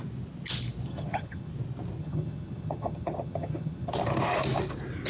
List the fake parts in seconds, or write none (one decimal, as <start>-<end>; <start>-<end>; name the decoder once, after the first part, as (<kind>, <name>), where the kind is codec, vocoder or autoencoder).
0.9-1.5 (vocoder, HiFi-GAN); 2.0-3.9